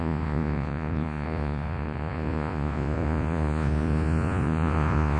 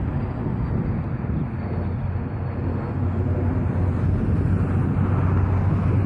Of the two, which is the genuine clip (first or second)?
second